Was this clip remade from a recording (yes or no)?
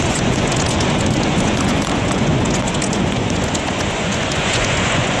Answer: yes